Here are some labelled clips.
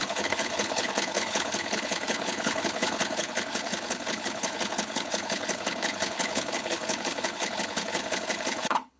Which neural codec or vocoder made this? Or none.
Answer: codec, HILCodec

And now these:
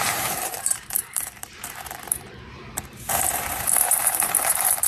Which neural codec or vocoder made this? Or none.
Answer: vocoder, BigVGAN v2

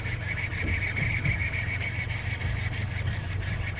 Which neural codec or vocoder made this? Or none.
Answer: none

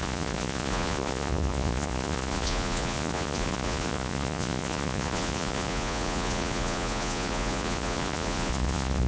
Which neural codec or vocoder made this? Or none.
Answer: vocoder, Vocos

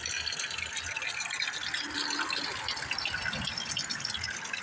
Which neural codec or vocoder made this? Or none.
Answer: none